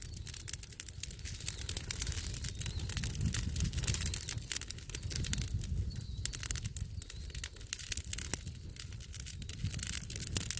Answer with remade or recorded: recorded